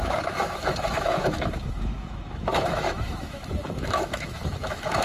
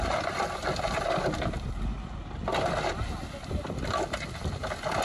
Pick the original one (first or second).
second